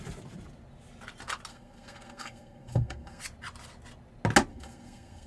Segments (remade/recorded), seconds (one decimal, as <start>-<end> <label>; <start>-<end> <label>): 0.0-1.5 recorded; 1.5-3.2 remade; 3.2-4.5 recorded; 4.5-5.3 remade